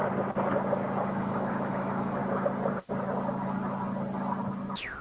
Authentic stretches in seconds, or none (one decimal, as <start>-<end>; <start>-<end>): 0.0-1.1; 2.2-5.0